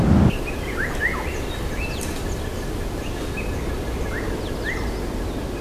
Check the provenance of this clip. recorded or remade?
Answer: recorded